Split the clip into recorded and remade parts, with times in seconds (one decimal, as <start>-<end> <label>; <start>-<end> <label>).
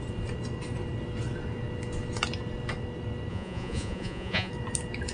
0.0-3.3 recorded; 3.3-4.5 remade; 4.5-5.1 recorded